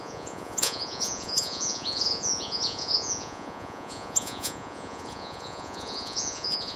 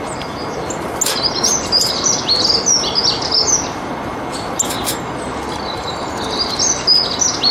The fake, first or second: first